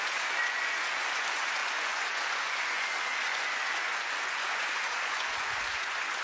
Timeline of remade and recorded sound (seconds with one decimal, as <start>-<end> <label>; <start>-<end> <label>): 0.0-6.2 remade